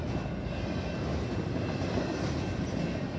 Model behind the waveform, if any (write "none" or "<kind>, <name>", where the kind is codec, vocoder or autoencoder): none